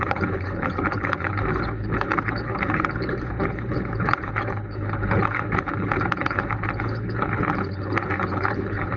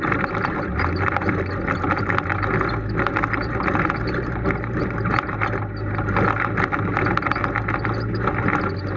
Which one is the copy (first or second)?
first